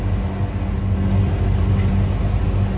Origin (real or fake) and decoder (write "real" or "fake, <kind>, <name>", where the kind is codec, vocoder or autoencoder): real